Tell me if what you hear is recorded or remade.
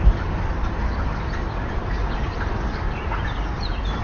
recorded